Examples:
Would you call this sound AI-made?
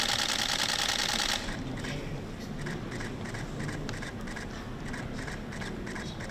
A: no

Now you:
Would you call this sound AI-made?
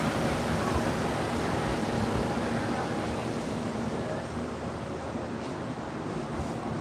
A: no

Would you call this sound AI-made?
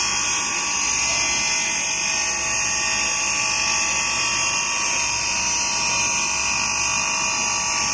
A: no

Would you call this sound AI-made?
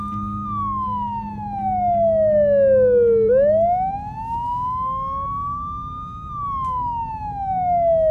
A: no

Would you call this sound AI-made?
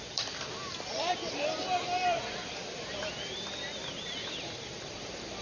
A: yes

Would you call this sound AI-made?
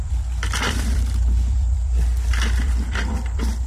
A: yes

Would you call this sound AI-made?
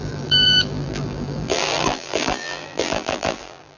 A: yes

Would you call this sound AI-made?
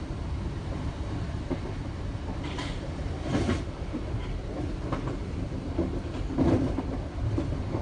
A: yes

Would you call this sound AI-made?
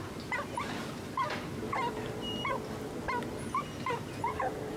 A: no